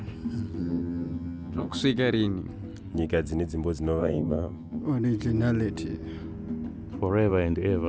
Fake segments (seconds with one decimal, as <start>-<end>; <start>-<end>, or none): 0.6-1.8; 4.0-4.8